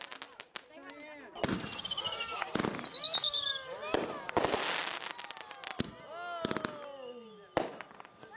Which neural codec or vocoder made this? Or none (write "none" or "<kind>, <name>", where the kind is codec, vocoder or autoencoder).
none